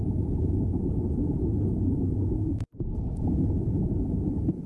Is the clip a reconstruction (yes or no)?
yes